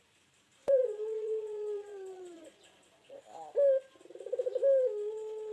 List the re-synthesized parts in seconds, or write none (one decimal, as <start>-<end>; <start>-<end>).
0.6-3.2

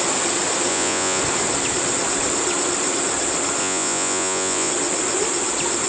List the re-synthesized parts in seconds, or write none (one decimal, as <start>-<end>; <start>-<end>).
0.7-1.2; 3.6-4.7

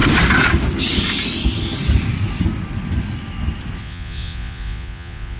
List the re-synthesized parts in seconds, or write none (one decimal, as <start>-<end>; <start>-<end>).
3.8-5.4

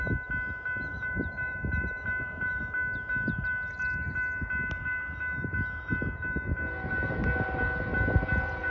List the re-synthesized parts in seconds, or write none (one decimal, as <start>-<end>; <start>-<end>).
0.9-2.6

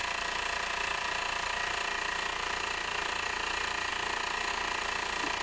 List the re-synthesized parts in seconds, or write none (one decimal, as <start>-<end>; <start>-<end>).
none

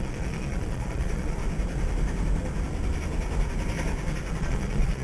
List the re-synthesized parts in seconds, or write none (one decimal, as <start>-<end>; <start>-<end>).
0.0-1.4; 4.4-5.0